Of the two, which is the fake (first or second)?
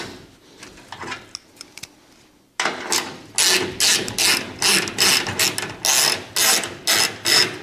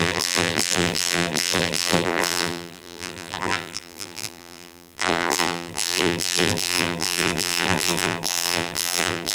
second